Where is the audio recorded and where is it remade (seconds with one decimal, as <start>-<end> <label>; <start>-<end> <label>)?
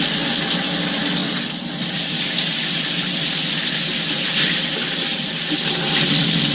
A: 0.0-6.5 recorded